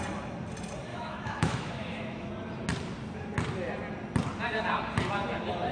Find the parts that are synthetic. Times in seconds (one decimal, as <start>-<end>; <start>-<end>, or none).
0.9-2.3